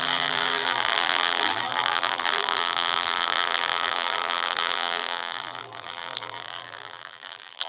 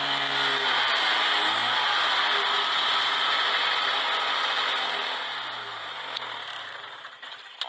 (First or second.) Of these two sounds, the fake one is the first